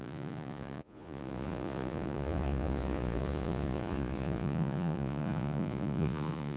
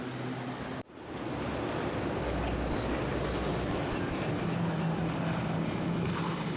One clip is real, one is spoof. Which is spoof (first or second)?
first